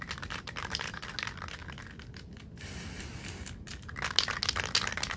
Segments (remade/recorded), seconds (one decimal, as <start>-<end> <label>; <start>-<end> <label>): 0.0-5.2 recorded